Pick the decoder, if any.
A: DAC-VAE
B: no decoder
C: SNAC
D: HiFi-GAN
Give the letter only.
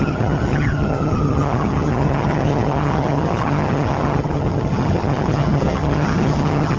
D